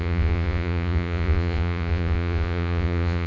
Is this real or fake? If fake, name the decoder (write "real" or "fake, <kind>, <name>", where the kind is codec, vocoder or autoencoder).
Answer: fake, vocoder, Vocos